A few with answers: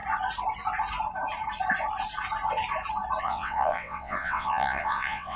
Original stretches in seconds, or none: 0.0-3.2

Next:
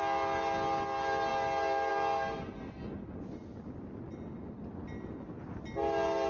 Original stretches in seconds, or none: 0.0-6.3

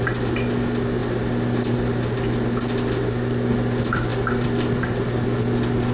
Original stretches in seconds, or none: 0.0-5.9